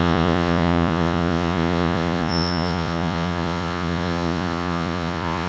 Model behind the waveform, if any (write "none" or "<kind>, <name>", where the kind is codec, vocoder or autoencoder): vocoder, Vocos